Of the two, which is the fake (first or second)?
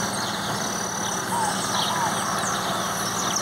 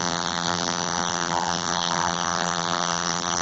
second